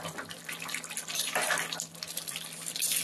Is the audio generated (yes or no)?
yes